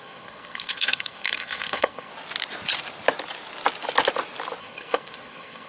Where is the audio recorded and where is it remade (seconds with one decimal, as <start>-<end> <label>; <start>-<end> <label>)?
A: 0.0-2.1 remade; 2.1-4.6 recorded; 4.6-5.7 remade